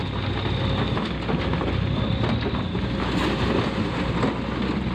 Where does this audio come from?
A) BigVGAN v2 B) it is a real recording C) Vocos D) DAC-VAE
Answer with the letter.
B